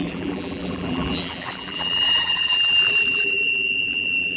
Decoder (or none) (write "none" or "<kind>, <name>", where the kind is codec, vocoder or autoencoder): vocoder, BigVGAN v2